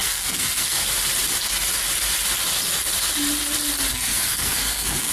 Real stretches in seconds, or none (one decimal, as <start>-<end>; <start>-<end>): 0.8-3.9

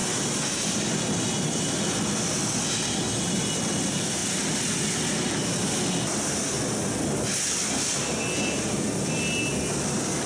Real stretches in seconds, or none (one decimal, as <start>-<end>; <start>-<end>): 0.0-10.3

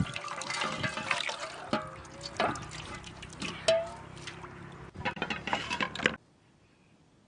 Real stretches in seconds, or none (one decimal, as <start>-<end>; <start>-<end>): 0.0-7.3

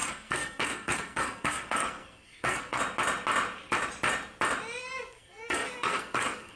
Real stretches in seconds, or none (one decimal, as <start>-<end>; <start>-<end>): 2.8-4.8

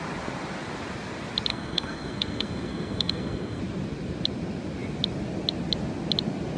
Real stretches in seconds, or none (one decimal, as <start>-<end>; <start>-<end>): 0.0-1.5; 3.6-6.6

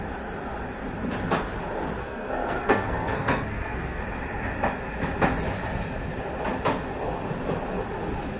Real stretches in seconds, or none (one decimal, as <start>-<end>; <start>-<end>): 0.0-2.0; 4.0-8.4

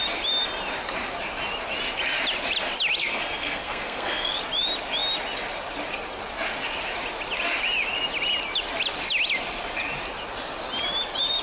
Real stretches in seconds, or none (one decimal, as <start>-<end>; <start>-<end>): 0.0-3.0; 4.4-11.4

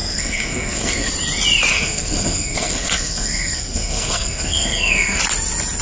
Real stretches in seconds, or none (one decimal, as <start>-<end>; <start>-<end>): 1.1-1.7; 5.2-5.8